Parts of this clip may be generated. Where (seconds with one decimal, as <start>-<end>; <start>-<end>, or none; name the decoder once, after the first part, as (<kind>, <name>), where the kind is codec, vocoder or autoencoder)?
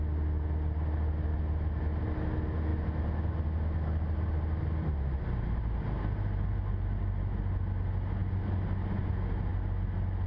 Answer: none